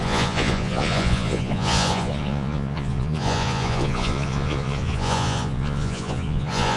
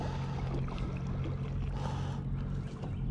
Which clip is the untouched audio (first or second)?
second